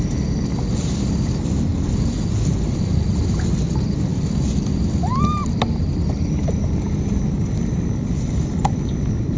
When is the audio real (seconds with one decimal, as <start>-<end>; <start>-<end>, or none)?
0.0-9.4